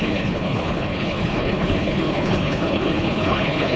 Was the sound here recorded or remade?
remade